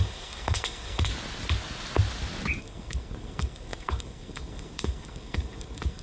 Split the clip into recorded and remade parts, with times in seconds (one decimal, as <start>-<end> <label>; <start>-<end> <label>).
0.0-1.1 remade; 1.1-2.6 recorded; 2.6-6.0 remade